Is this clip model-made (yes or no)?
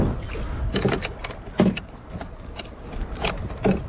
no